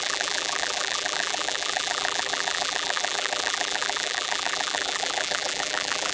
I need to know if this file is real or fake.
fake